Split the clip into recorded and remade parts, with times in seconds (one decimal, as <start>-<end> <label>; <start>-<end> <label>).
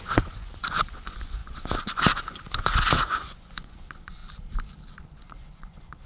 0.0-4.2 remade; 4.2-5.0 recorded; 5.0-6.1 remade